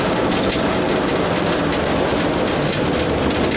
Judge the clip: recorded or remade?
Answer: recorded